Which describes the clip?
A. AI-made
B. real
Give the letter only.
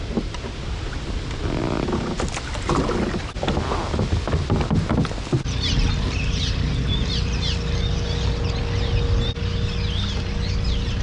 B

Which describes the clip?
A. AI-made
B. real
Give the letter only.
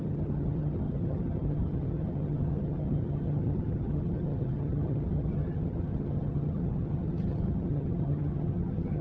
A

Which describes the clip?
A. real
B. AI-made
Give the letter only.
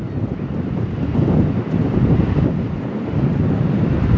A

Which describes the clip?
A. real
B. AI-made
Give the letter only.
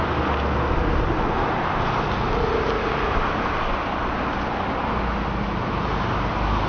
A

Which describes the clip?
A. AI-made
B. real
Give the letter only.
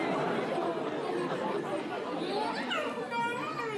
B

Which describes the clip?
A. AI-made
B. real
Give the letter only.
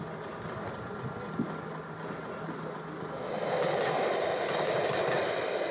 B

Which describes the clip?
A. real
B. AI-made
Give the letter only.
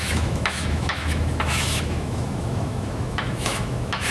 B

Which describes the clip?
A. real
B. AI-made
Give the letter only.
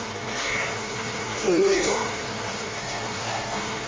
B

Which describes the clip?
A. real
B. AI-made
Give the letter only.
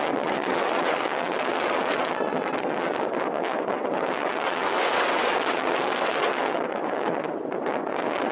B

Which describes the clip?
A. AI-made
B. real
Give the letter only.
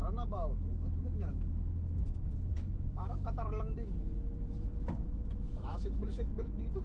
A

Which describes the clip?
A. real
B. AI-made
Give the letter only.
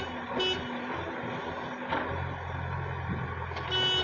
A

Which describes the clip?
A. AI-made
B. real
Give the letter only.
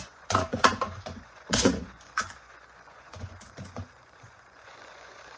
A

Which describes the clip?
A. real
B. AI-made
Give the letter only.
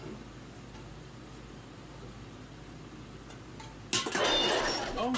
A